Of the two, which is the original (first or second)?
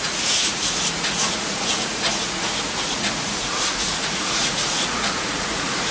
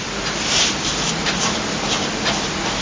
second